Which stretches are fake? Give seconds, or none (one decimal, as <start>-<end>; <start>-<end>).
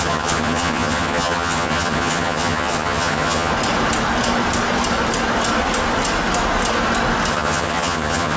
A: 0.0-3.5; 7.3-8.4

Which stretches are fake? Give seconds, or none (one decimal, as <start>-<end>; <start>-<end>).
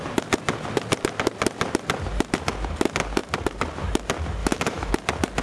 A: 4.4-4.9